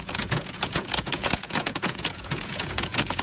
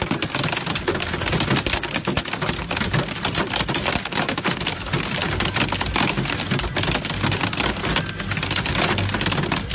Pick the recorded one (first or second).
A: second